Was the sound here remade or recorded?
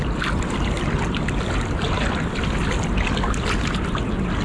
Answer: recorded